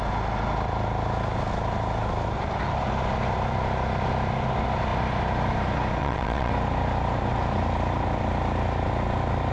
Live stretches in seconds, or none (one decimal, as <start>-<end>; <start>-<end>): 0.0-6.0; 6.5-9.5